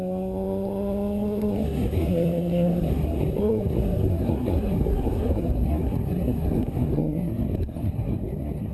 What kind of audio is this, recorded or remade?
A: remade